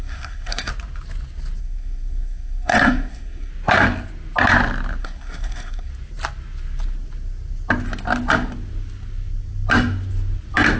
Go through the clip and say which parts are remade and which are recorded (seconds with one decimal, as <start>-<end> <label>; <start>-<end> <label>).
0.0-0.7 remade; 0.7-1.6 recorded; 1.6-3.5 remade; 3.5-5.0 recorded; 5.0-5.9 remade; 5.9-10.8 recorded